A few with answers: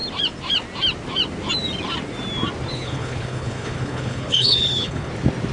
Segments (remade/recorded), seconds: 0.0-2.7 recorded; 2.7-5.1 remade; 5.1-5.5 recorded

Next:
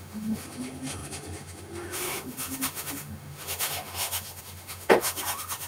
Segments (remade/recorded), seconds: 0.0-5.7 remade

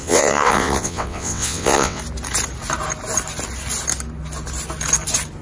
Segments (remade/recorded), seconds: 0.0-2.0 remade; 2.0-5.4 recorded

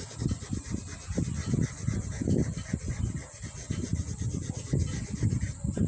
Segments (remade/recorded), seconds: 0.0-5.9 recorded

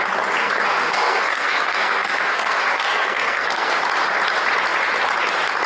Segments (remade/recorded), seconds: 0.0-0.4 recorded; 0.4-3.8 remade; 3.8-5.7 recorded